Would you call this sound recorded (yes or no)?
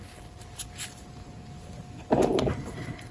yes